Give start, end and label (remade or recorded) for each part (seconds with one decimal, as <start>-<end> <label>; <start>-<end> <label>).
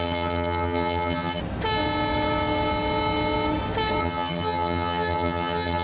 0.0-1.4 remade; 1.4-4.0 recorded; 4.0-5.8 remade